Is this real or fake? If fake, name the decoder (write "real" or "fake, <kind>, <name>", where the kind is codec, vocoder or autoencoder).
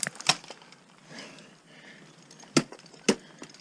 real